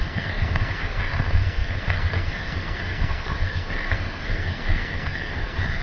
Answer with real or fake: fake